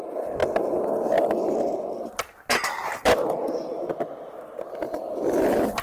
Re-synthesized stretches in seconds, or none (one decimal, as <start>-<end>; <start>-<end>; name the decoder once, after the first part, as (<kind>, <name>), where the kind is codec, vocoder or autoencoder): none